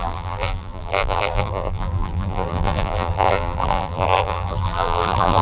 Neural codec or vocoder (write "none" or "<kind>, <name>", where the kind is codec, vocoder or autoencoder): vocoder, BigVGAN v2